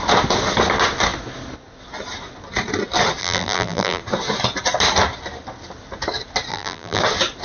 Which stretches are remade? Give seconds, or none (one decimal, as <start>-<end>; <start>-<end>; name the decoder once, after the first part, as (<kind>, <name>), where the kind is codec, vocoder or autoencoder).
3.2-4.0 (vocoder, BigVGAN v2); 6.5-7.0